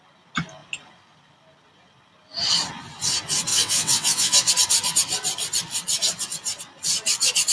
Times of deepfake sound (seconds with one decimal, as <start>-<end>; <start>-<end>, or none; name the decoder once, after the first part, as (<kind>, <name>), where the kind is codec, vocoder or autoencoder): 3.5-4.5 (vocoder, WaveNeXt)